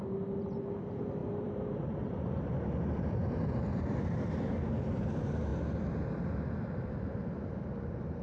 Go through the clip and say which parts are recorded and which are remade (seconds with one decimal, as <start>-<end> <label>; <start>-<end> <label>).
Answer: 0.0-1.2 recorded; 1.2-4.7 remade; 4.7-8.2 recorded